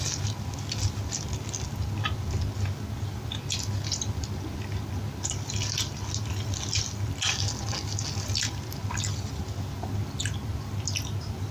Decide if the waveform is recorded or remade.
recorded